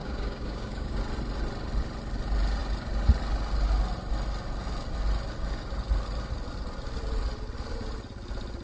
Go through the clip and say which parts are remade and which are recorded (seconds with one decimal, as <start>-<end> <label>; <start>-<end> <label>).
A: 0.0-1.0 remade; 1.0-8.6 recorded